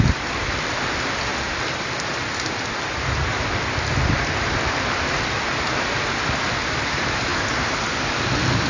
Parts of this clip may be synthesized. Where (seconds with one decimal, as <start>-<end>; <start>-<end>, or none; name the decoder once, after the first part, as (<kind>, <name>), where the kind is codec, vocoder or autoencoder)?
none